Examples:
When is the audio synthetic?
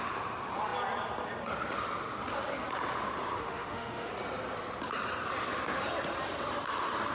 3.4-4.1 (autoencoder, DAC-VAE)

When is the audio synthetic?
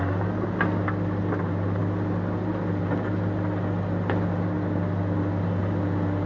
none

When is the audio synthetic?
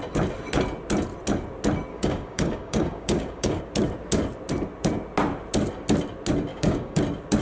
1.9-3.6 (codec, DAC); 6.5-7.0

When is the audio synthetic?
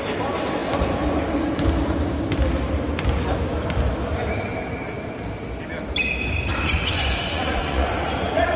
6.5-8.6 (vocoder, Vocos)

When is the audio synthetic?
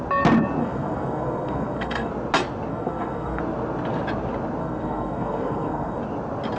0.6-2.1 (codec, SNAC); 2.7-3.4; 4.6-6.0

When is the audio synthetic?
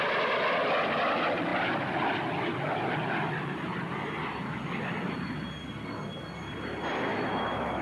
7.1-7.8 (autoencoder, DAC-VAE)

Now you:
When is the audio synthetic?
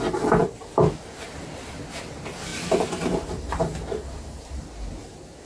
0.4-1.8 (vocoder, BigVGAN v2); 2.5-4.5